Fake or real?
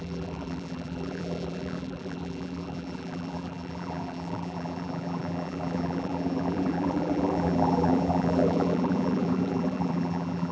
fake